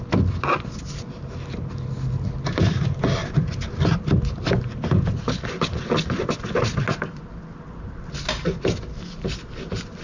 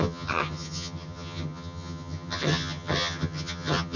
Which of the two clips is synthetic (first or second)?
second